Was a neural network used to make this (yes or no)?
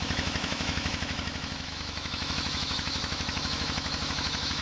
yes